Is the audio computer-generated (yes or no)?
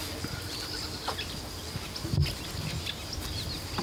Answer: no